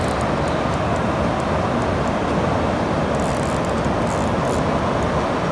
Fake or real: real